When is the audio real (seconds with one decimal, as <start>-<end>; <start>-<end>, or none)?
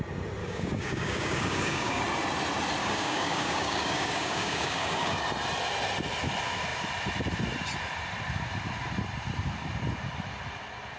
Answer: 0.0-0.4; 2.0-2.8; 5.2-11.0